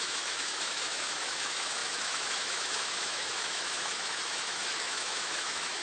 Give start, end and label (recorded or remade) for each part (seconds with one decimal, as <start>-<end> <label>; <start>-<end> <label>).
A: 0.0-5.8 remade